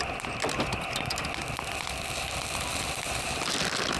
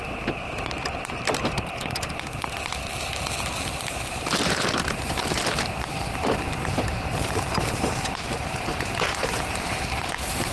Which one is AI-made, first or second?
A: second